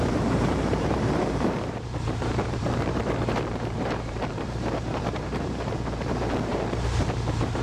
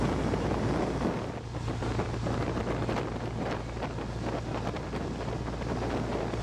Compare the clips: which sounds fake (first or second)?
first